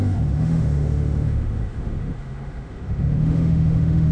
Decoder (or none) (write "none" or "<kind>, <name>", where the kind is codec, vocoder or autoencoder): autoencoder, DAC-VAE